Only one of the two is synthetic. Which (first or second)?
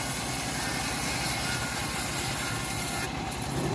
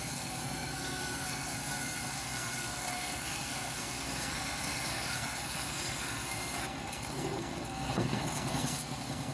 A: second